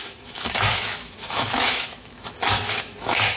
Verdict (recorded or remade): remade